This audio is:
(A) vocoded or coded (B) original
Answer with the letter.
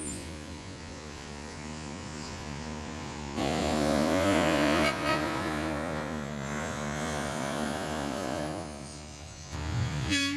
A